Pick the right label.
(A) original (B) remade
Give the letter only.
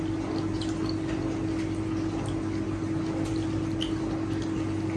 A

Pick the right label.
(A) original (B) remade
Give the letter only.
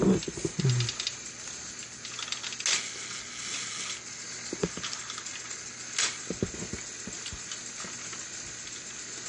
A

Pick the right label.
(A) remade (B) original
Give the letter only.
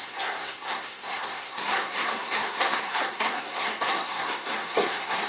A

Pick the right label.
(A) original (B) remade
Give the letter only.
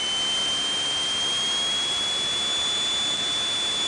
A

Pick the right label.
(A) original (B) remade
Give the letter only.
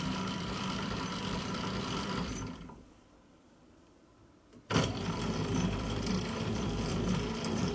B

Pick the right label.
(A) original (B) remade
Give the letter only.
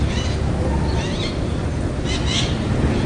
A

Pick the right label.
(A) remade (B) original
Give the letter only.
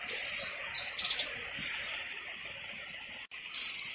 B